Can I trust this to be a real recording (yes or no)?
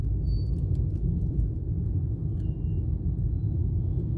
yes